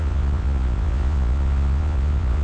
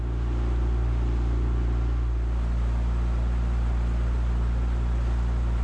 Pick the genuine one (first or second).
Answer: second